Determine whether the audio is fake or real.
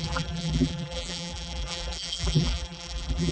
fake